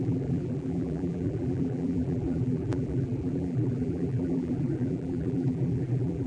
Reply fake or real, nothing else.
fake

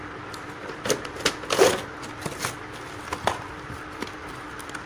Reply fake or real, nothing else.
real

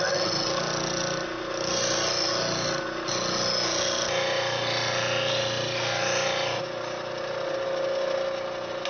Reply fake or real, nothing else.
real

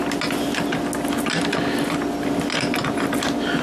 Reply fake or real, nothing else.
real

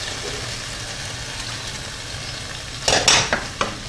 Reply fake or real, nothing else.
real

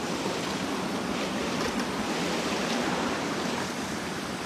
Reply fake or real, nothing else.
fake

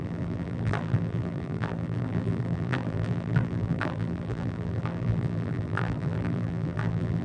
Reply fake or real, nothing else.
fake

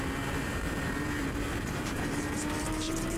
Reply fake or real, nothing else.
fake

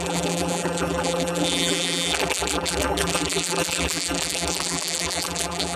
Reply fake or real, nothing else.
fake